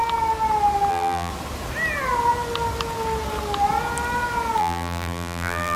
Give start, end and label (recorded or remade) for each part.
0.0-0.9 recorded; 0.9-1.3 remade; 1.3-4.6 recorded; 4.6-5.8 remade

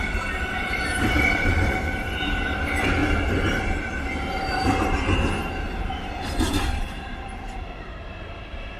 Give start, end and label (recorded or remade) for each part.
0.0-3.0 remade; 3.0-5.8 recorded; 5.8-8.8 remade

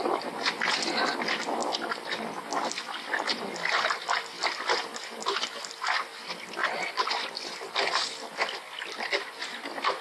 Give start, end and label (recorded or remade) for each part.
0.0-6.6 recorded; 6.6-7.7 remade; 7.7-10.0 recorded

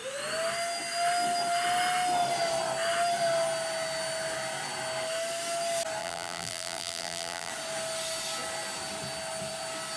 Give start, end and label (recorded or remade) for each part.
0.0-6.0 recorded; 6.0-7.5 remade; 7.5-10.0 recorded